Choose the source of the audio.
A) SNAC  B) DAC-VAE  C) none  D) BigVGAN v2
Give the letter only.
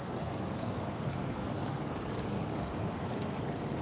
A